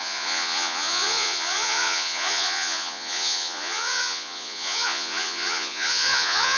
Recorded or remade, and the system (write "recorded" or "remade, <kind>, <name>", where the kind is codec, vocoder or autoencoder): remade, vocoder, Vocos